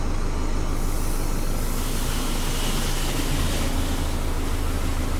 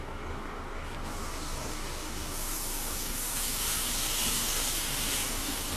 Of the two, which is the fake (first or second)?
second